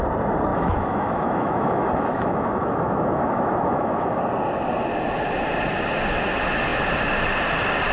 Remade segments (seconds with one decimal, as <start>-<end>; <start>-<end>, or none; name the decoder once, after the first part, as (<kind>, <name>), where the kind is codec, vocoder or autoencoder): 0.5-4.2 (autoencoder, DAC-VAE)